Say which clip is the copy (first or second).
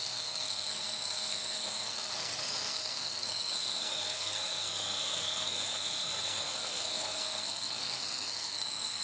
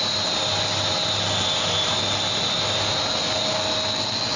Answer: first